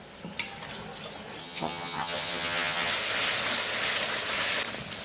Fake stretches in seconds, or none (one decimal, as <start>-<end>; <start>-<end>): 1.4-2.9